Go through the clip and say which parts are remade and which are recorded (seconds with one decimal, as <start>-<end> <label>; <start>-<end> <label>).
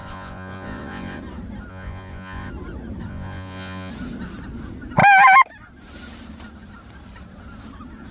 0.0-1.2 remade; 1.2-1.7 recorded; 1.7-2.5 remade; 2.5-3.1 recorded; 3.1-3.9 remade; 3.9-8.1 recorded